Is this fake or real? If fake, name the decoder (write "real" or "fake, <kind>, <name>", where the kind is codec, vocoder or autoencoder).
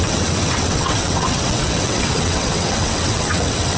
fake, vocoder, WaveNeXt